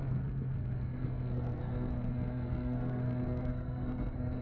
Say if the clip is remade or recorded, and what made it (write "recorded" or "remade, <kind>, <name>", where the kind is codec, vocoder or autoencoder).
remade, codec, SNAC